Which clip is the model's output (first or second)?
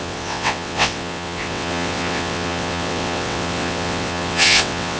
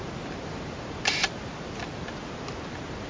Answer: first